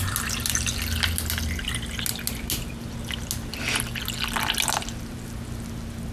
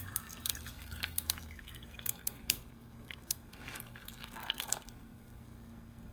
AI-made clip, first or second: second